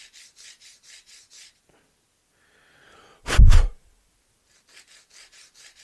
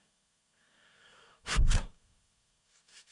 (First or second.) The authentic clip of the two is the first